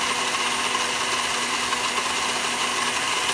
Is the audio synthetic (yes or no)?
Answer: no